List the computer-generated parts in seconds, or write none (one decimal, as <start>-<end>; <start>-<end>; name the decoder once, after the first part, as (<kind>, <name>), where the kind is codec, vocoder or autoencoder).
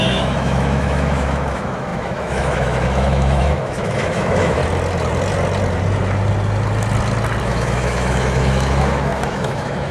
0.0-4.6 (autoencoder, DAC-VAE); 7.4-9.9